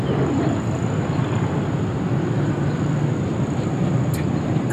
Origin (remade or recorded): recorded